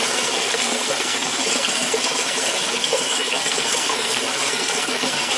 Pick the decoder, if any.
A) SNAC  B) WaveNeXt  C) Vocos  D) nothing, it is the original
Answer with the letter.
A